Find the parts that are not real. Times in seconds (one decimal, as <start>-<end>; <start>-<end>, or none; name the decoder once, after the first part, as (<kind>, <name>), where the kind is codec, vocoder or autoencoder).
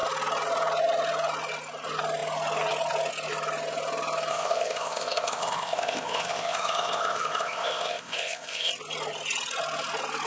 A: 4.3-8.7 (codec, ZipCodec)